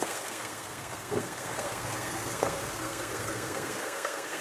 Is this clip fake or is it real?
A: fake